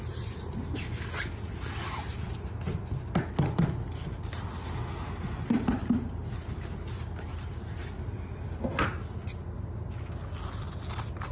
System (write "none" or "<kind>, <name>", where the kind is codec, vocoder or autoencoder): none